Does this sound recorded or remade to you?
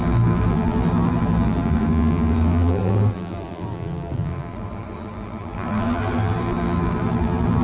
remade